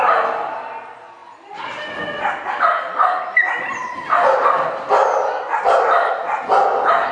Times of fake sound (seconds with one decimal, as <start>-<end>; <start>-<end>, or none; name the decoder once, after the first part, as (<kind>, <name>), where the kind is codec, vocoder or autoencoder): 3.8-7.1 (vocoder, BigVGAN v2)